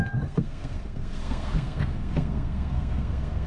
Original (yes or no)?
no